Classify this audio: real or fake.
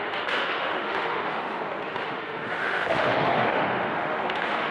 fake